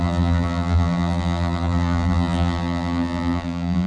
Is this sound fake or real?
fake